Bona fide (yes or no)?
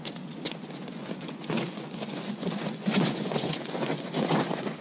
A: no